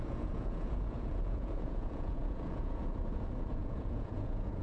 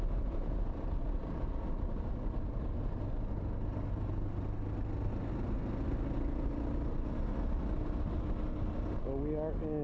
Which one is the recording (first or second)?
second